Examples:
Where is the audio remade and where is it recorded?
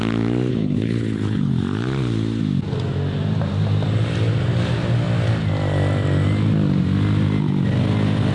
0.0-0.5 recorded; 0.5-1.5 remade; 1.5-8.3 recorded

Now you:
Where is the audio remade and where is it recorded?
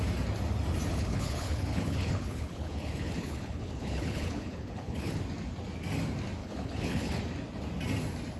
0.0-0.9 recorded; 0.9-5.2 remade; 5.2-6.4 recorded; 6.4-7.2 remade; 7.2-8.4 recorded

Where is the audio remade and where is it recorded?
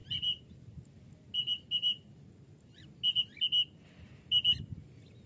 0.0-5.3 recorded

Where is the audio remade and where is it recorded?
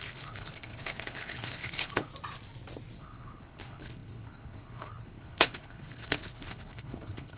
0.0-2.1 remade; 2.1-3.0 recorded; 3.0-7.4 remade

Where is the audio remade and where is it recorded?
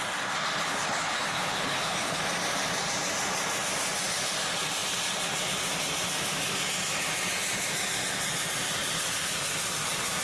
0.0-0.6 recorded; 0.6-2.2 remade; 2.2-10.2 recorded